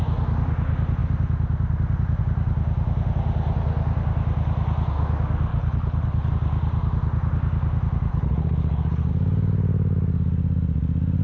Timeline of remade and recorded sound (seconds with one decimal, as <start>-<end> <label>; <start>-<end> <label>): 0.0-5.5 recorded; 5.5-6.3 remade; 6.3-8.1 recorded; 8.1-9.1 remade; 9.1-11.2 recorded